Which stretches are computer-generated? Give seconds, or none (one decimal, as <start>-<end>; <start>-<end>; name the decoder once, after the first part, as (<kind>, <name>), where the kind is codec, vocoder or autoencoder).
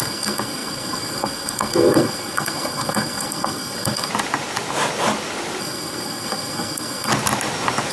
0.0-4.1 (codec, SNAC); 5.6-7.1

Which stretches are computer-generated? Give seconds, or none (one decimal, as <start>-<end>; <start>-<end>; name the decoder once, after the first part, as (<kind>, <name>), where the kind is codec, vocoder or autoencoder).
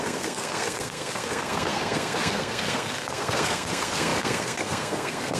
0.0-5.4 (codec, SNAC)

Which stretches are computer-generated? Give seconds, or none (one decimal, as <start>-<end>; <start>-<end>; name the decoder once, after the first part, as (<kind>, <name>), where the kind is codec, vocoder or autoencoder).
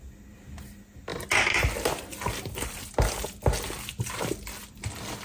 none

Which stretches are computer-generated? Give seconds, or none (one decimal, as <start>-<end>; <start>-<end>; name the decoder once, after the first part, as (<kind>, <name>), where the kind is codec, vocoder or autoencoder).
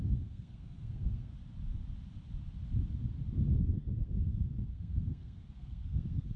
0.0-1.3 (codec, SNAC); 3.6-6.4